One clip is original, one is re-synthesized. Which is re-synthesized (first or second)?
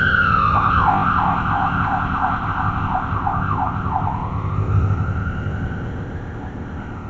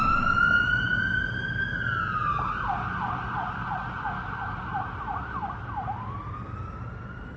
first